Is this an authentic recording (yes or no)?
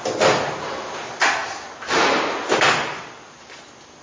yes